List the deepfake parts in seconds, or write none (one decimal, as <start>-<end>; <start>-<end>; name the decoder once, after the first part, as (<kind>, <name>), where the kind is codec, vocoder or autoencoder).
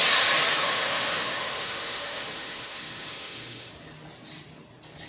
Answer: 0.6-3.7 (autoencoder, DAC-VAE)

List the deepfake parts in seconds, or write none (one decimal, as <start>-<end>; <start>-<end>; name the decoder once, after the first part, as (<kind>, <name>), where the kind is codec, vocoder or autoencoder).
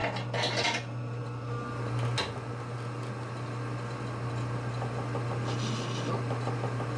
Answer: none